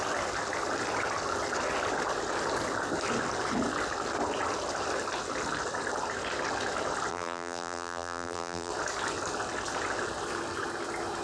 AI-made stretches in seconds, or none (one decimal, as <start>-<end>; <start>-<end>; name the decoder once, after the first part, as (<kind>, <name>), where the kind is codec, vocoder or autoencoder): 7.1-8.7 (vocoder, BigVGAN v2)